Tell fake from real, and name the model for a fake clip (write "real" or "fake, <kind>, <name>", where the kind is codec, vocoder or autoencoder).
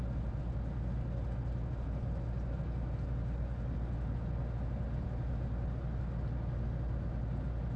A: real